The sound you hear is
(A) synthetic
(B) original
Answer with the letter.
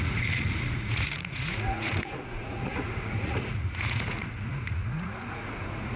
A